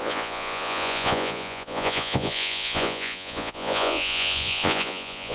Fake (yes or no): yes